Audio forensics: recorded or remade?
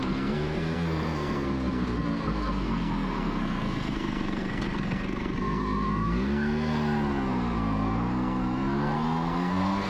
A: remade